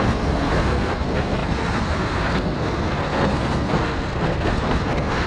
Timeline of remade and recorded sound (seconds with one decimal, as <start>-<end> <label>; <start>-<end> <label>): 0.0-5.3 remade